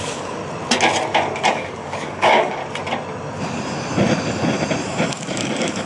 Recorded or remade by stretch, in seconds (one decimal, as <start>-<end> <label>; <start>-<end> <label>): 0.0-0.4 remade; 0.4-1.5 recorded; 1.5-2.6 remade; 2.6-5.1 recorded; 5.1-5.9 remade